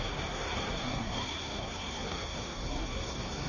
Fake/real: fake